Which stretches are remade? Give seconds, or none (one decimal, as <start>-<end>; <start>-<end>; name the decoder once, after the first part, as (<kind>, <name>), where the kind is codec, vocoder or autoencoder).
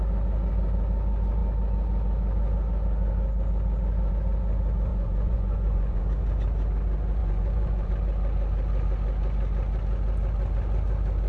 4.9-6.0 (vocoder, Vocos); 7.2-7.9